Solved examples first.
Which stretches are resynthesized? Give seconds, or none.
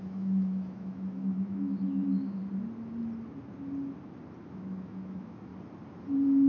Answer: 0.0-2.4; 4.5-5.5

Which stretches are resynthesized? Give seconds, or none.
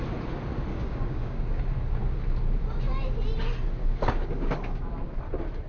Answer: 0.7-1.6; 3.8-5.2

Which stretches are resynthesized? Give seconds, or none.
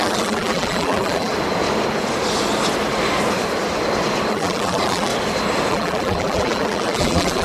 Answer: 0.0-1.3; 4.3-5.1; 5.7-7.4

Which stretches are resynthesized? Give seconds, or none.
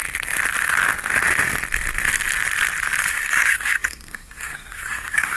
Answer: 3.1-5.4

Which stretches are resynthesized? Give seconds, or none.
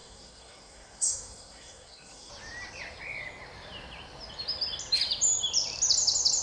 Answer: 0.0-2.3